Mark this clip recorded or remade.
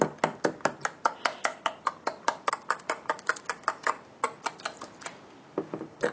recorded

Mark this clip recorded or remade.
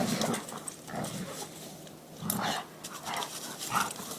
recorded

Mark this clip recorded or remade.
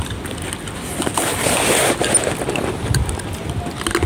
recorded